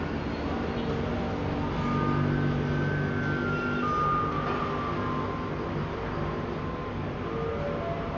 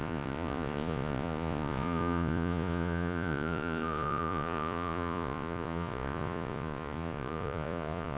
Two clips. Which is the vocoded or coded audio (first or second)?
second